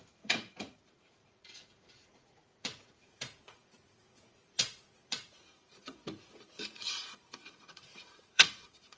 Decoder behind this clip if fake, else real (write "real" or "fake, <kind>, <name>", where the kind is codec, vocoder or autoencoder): fake, vocoder, Vocos